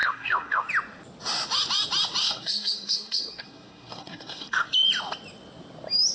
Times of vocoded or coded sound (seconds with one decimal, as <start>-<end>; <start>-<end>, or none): 0.0-0.7; 2.2-4.7